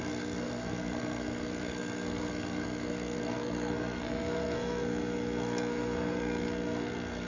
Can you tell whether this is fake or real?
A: fake